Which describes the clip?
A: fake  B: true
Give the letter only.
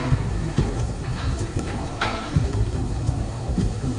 A